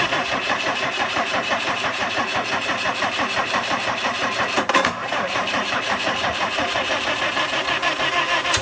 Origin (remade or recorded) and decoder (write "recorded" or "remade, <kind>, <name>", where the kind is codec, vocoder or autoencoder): remade, vocoder, BigVGAN v2